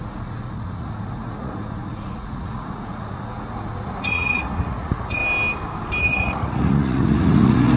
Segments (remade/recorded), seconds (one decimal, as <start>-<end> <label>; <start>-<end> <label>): 0.0-5.2 remade; 5.2-6.0 recorded; 6.0-7.8 remade